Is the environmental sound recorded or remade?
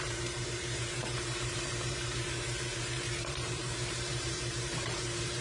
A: remade